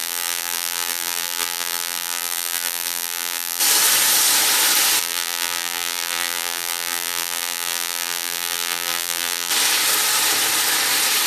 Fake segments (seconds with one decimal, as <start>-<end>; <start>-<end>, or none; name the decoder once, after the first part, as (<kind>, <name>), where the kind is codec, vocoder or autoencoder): 0.0-3.6 (vocoder, BigVGAN v2); 5.0-9.5